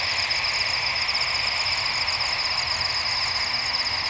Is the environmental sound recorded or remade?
recorded